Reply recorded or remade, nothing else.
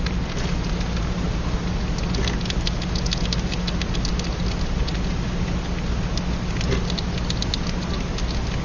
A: recorded